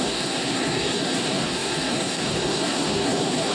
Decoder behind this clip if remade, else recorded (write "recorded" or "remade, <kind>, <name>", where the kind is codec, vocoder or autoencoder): remade, codec, SNAC